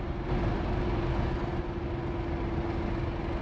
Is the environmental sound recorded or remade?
recorded